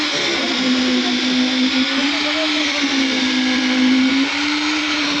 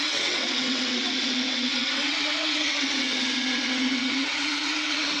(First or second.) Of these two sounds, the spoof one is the second